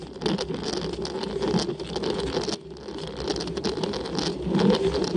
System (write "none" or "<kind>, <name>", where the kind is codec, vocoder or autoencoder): none